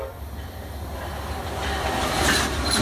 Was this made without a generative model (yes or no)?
yes